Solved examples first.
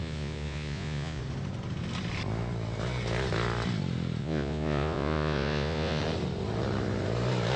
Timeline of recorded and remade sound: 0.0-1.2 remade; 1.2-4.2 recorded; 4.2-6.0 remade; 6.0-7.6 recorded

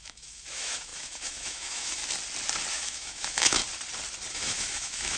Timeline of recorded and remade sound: 0.0-2.0 remade; 2.0-2.7 recorded; 2.7-3.6 remade; 3.6-4.3 recorded; 4.3-5.2 remade

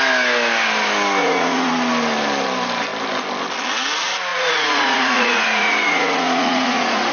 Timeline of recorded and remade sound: 0.0-1.2 recorded; 1.2-1.7 remade; 1.7-4.3 recorded; 4.3-7.1 remade